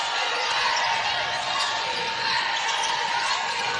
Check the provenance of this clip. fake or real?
fake